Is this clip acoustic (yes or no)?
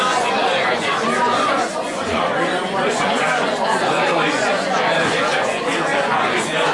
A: no